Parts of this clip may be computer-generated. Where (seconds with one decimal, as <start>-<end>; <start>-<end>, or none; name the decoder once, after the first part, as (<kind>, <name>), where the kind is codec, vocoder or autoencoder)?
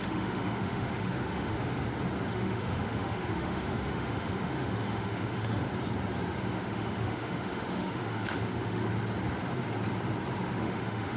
0.0-1.8 (autoencoder, DAC-VAE); 2.3-5.7; 6.4-8.8; 10.6-11.2